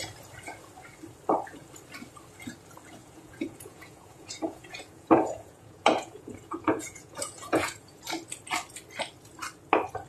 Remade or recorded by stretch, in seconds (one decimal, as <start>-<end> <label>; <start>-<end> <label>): 0.0-3.0 recorded; 3.0-8.0 remade; 8.0-10.1 recorded

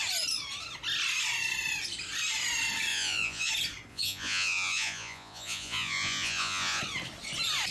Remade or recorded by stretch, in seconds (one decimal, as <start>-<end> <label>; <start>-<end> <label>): 0.0-2.9 recorded; 2.9-3.5 remade; 3.5-3.9 recorded; 3.9-6.8 remade; 6.8-7.7 recorded

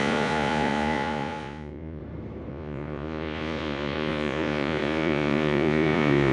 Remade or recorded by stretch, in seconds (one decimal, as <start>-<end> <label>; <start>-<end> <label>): 0.0-2.0 remade; 2.0-2.5 recorded; 2.5-6.3 remade

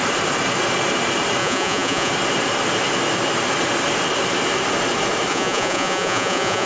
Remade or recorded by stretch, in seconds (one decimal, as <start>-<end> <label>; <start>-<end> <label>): 0.0-1.4 recorded; 1.4-2.1 remade; 2.1-5.3 recorded; 5.3-6.7 remade

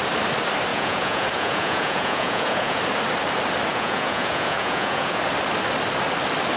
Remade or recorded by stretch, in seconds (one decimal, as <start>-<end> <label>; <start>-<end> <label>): 0.0-0.7 recorded; 0.7-2.8 remade; 2.8-3.7 recorded; 3.7-5.2 remade; 5.2-6.6 recorded

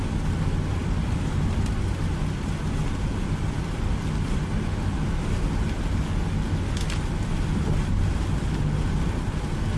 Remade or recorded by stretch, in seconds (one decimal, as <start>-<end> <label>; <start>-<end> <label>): 0.0-9.8 recorded

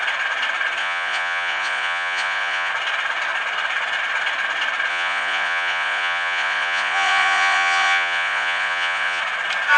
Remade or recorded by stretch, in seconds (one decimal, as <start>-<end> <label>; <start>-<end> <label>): 0.0-0.8 recorded; 0.8-2.7 remade; 2.7-4.9 recorded; 4.9-9.2 remade; 9.2-9.8 recorded